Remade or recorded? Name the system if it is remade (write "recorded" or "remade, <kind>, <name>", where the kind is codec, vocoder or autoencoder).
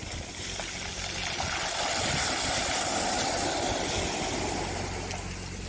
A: recorded